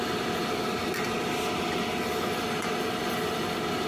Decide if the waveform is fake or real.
real